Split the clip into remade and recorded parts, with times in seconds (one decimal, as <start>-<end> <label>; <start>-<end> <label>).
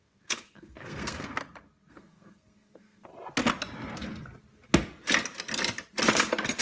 0.0-1.4 remade; 1.4-1.9 recorded; 1.9-3.1 remade; 3.1-6.6 recorded